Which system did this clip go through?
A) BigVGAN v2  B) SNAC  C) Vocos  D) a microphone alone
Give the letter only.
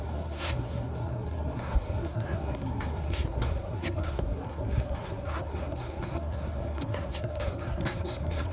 B